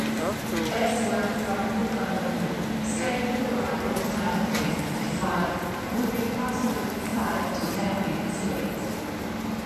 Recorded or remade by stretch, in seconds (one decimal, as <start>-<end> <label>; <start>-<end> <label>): 0.0-1.8 recorded; 1.8-6.0 remade; 6.0-7.1 recorded; 7.1-7.7 remade; 7.7-9.7 recorded